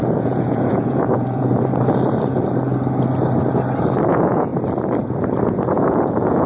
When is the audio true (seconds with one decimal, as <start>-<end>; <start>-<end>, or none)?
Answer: 1.5-4.1; 4.5-5.4